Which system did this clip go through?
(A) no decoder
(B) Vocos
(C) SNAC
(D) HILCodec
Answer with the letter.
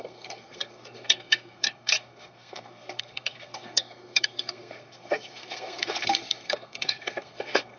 C